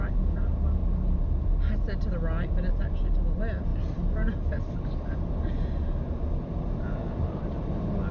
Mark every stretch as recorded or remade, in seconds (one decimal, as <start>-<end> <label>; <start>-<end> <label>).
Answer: 0.0-8.1 recorded